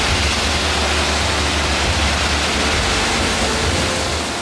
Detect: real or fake real